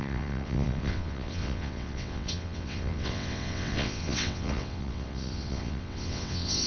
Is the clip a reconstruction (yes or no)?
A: yes